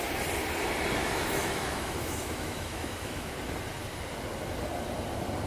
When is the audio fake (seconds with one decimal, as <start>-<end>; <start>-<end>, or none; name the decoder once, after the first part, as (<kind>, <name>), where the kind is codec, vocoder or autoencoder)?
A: 1.0-3.3 (autoencoder, DAC-VAE)